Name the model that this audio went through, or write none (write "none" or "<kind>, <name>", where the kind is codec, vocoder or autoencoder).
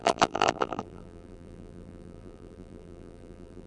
vocoder, BigVGAN v2